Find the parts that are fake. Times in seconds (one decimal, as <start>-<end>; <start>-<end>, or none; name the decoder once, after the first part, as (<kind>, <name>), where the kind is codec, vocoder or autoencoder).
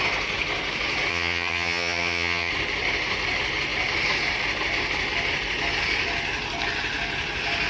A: 1.1-2.5 (vocoder, HiFi-GAN)